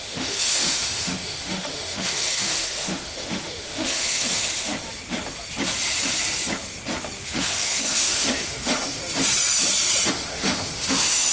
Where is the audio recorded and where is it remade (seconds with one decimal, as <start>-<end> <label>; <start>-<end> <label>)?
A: 0.0-4.7 remade; 4.7-7.2 recorded; 7.2-9.0 remade; 9.0-10.1 recorded; 10.1-11.3 remade